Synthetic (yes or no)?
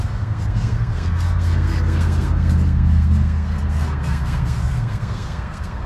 yes